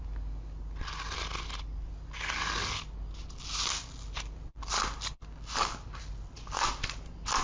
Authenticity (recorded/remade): recorded